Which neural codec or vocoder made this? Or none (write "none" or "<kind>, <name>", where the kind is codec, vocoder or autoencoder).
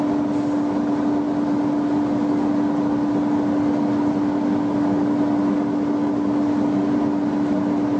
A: none